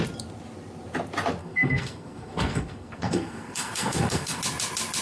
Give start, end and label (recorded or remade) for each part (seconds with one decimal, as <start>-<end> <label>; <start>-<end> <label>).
0.0-1.4 recorded; 1.4-4.4 remade; 4.4-5.0 recorded